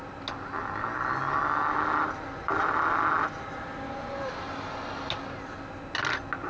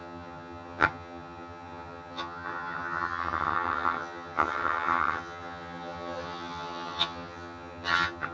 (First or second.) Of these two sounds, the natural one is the first